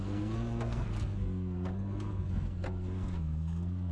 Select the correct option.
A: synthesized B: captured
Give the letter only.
A